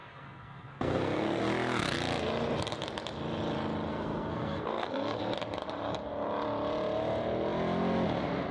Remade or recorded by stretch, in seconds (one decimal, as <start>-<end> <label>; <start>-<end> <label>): 0.0-1.4 remade; 1.4-3.9 recorded; 3.9-5.2 remade; 5.2-8.5 recorded